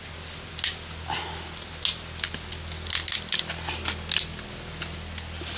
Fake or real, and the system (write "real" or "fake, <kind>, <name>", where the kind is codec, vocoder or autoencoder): real